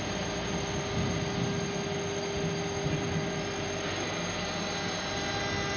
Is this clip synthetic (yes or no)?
no